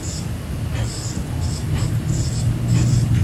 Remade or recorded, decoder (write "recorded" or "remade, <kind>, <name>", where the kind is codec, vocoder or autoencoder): recorded